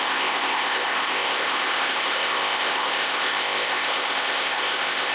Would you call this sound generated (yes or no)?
yes